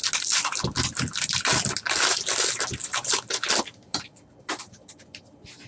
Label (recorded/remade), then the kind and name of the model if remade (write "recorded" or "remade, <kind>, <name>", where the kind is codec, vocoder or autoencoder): recorded